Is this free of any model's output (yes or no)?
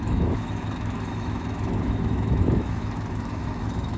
no